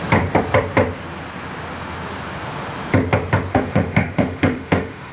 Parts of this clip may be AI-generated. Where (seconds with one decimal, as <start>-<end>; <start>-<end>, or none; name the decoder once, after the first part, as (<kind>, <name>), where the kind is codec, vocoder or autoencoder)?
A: 3.5-5.1 (autoencoder, DAC-VAE)

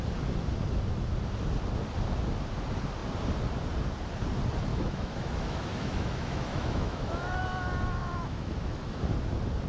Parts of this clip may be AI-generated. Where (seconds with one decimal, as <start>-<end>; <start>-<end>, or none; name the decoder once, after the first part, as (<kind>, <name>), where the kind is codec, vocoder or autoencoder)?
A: 4.7-7.4 (autoencoder, DAC-VAE); 8.0-9.0

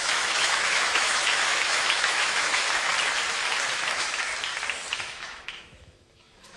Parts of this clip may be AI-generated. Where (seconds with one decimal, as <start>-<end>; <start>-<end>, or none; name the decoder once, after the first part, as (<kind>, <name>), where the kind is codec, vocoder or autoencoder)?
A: 0.0-2.9 (autoencoder, DAC-VAE); 3.7-4.3; 4.9-6.6